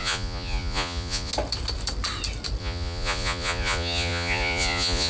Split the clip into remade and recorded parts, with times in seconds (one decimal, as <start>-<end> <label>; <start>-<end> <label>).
0.0-1.3 remade; 1.3-2.6 recorded; 2.6-5.1 remade